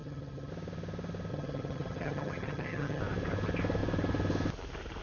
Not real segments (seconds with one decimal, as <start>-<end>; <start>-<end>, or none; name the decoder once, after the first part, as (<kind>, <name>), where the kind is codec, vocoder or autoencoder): 0.0-0.5 (vocoder, HiFi-GAN); 1.3-3.0